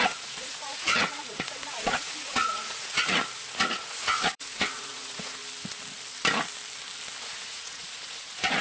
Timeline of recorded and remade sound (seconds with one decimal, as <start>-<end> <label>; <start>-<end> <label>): 0.0-5.4 remade; 5.4-7.2 recorded; 7.2-8.6 remade